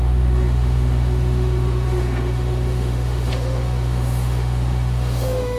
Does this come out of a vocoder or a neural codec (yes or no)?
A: yes